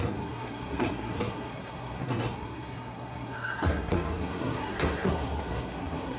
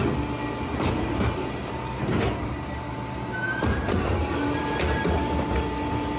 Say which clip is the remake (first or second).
first